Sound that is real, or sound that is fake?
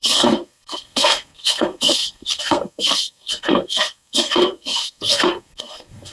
fake